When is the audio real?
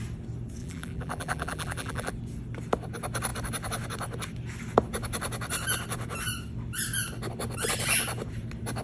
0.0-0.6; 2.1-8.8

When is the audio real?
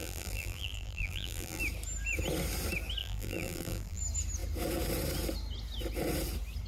1.6-3.0; 4.0-6.7